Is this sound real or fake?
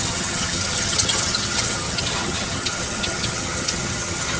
fake